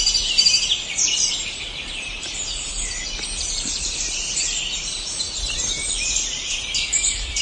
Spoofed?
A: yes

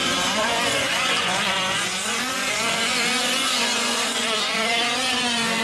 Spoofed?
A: yes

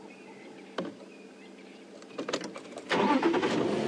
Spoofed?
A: no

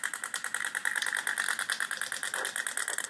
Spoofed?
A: no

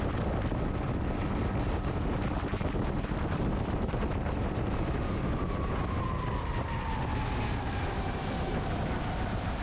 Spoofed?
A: no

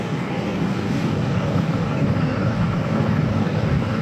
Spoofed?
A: yes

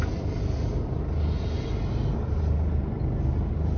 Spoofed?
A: no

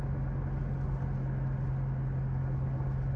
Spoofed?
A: no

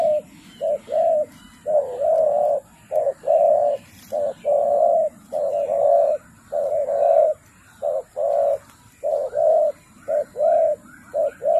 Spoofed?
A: no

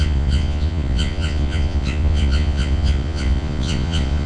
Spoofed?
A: yes